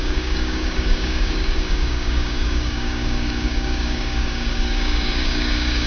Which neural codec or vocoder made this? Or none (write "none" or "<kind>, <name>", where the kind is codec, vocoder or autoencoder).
codec, DAC